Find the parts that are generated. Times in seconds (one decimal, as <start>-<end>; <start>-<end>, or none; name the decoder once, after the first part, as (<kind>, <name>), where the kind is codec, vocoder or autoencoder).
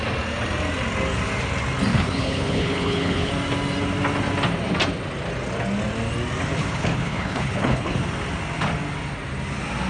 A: 1.9-3.3 (codec, HILCodec); 6.6-8.0